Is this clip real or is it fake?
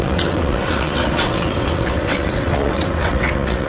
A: fake